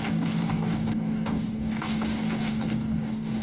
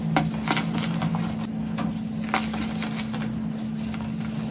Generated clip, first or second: first